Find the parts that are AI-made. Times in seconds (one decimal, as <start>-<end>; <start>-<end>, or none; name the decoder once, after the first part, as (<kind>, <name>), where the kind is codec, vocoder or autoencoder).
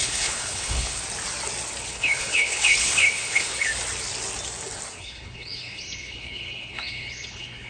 0.0-1.0 (codec, HILCodec); 1.9-3.7; 5.0-7.7